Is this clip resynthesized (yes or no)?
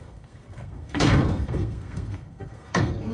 yes